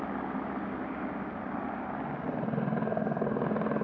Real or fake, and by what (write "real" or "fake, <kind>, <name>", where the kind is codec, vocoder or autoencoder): real